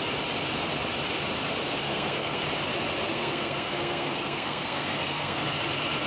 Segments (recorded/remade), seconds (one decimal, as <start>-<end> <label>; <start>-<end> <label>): 0.0-1.8 recorded; 1.8-2.4 remade; 2.4-3.1 recorded; 3.1-5.4 remade; 5.4-6.1 recorded